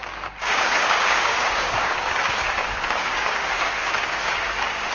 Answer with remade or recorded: remade